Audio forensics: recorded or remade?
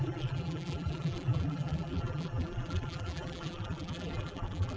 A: remade